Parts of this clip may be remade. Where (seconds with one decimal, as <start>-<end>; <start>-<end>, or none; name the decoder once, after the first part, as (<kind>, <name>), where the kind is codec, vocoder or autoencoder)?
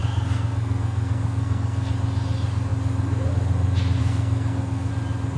0.0-1.9 (codec, SNAC); 4.0-4.9